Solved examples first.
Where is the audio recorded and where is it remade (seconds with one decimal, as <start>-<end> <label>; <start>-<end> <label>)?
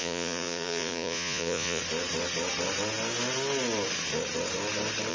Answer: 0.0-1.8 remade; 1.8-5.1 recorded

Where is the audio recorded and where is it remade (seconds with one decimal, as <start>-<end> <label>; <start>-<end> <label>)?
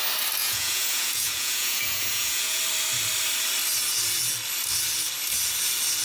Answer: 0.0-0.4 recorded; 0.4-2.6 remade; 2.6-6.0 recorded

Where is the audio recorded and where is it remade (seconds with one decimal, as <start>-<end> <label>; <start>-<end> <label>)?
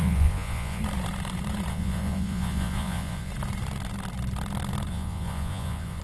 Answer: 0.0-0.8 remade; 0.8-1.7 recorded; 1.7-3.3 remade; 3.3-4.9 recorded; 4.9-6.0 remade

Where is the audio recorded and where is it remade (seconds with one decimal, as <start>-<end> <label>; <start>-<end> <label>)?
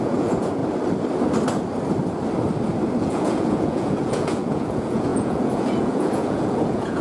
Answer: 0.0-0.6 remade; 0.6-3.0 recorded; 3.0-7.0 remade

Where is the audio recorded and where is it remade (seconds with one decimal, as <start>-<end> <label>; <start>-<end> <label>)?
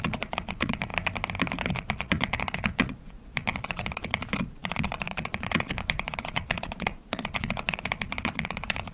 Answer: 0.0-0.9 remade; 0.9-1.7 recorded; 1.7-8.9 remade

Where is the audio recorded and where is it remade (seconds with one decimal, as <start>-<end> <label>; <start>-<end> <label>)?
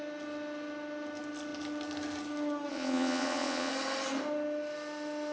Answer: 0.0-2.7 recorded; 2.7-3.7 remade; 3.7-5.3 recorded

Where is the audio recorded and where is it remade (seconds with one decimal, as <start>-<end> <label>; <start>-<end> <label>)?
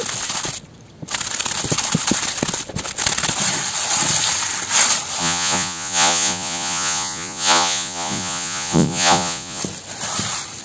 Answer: 0.0-5.2 recorded; 5.2-9.6 remade; 9.6-10.6 recorded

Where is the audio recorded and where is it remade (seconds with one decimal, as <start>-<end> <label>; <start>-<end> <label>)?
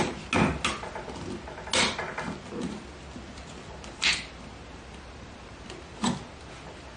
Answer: 0.0-7.0 recorded